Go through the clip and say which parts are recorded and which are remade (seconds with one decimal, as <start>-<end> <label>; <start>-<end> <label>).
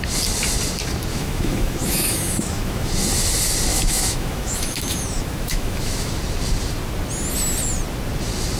0.0-1.1 recorded; 1.1-2.9 remade; 2.9-3.7 recorded; 3.7-6.1 remade; 6.1-8.6 recorded